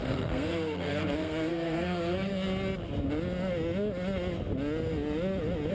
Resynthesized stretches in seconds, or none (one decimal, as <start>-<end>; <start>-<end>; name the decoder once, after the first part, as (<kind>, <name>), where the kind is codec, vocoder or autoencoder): 0.0-2.3 (codec, SNAC)